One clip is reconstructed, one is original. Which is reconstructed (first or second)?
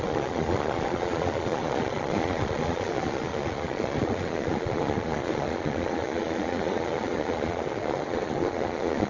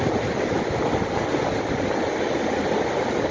first